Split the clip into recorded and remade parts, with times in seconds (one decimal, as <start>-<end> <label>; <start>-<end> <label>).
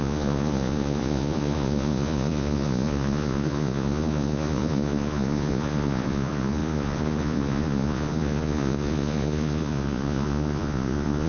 0.0-11.3 remade